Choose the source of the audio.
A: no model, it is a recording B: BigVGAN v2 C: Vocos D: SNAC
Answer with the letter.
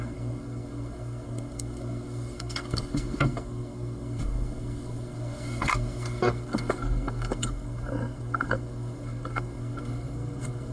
D